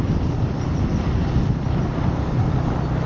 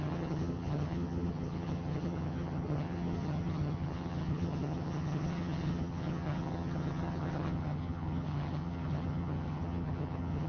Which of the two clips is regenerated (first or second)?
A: second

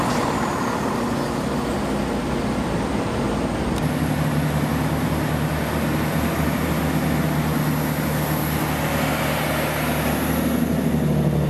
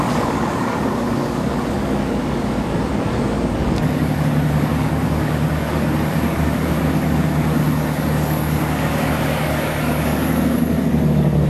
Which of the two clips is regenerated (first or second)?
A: second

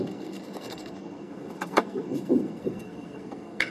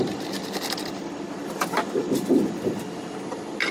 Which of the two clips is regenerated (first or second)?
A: first